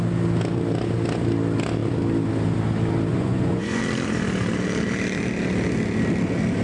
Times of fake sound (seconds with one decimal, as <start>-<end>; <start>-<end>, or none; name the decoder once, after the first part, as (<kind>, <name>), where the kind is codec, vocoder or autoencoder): 3.1-3.8 (vocoder, Vocos)

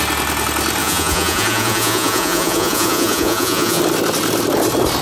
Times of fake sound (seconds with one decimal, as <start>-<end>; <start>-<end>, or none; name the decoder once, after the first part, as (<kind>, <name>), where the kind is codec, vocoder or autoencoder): 0.8-3.8 (vocoder, Vocos)